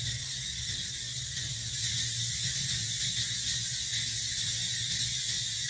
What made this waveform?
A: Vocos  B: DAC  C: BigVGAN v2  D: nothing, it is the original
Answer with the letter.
D